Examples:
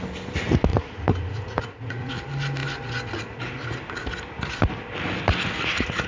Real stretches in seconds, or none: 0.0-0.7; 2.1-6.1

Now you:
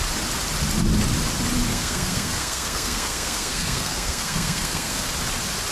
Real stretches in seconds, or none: 0.0-1.7; 5.1-5.7

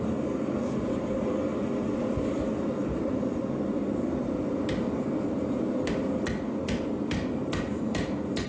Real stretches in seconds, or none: 0.0-8.5

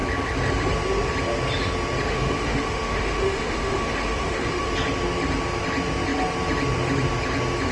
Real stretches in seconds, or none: 0.0-2.1; 4.7-7.7

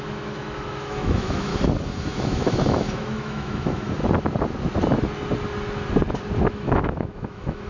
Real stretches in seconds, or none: 1.5-2.0; 4.0-6.4